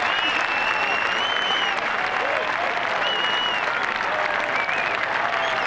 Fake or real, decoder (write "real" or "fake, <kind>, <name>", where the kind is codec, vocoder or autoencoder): real